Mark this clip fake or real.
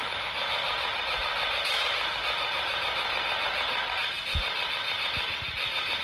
real